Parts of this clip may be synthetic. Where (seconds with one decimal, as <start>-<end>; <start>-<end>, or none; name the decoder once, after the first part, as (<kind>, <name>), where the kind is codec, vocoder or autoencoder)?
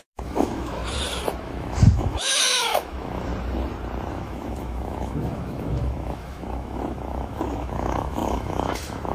0.0-0.8 (autoencoder, DAC-VAE); 1.4-3.3; 4.1-9.1